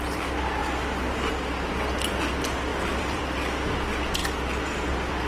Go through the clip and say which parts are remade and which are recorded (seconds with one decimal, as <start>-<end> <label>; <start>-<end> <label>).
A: 0.0-2.7 recorded; 2.7-3.2 remade; 3.2-4.2 recorded; 4.2-4.8 remade; 4.8-5.3 recorded